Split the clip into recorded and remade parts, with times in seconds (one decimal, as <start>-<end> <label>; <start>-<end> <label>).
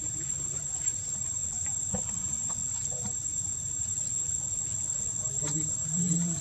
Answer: 0.0-1.4 remade; 1.4-2.2 recorded; 2.2-3.9 remade; 3.9-5.1 recorded; 5.1-6.4 remade